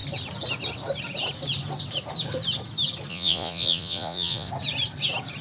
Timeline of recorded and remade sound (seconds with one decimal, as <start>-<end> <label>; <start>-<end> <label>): 0.0-3.1 recorded; 3.1-4.5 remade; 4.5-5.4 recorded